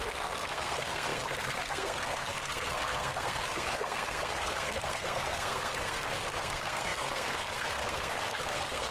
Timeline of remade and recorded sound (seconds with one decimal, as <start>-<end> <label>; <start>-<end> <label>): 0.0-8.9 remade